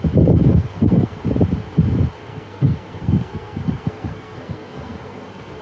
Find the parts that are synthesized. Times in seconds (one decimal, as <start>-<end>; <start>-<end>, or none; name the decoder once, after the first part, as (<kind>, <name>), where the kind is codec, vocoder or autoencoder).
0.5-1.2 (codec, SNAC); 2.2-5.6